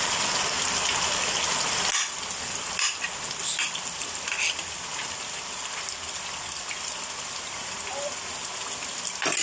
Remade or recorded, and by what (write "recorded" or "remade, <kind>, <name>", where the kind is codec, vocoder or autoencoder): recorded